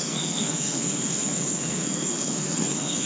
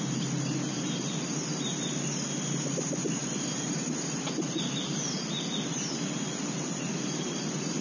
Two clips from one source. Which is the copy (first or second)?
first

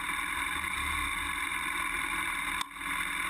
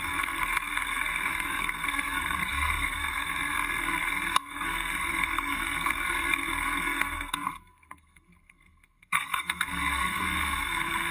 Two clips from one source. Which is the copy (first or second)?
second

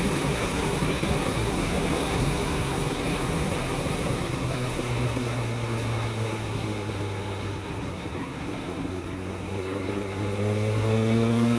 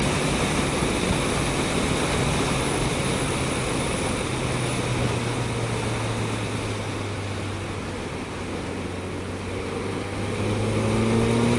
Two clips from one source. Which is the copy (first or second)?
first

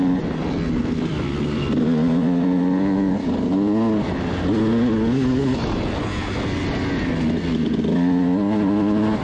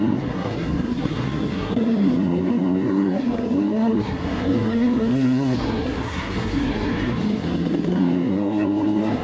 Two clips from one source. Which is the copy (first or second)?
second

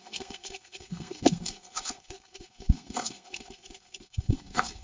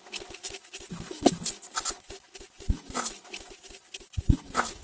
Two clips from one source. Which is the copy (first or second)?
first